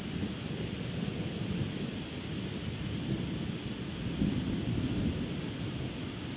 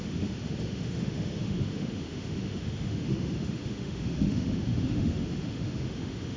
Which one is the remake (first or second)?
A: second